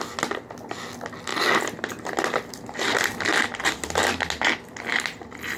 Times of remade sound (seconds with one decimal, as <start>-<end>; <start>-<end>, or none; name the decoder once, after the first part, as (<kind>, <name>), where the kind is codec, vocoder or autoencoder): none